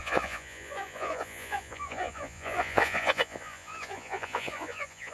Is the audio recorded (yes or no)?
no